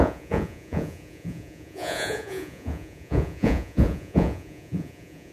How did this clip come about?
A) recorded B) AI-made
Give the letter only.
B